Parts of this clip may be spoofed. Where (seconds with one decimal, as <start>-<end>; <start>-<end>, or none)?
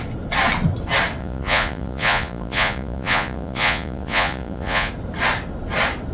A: 1.2-4.9